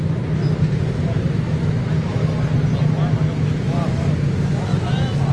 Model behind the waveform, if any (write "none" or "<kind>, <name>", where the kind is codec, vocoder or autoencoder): none